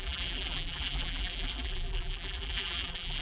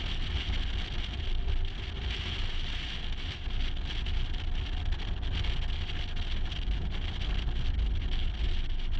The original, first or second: second